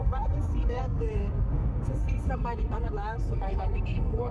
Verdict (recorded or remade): remade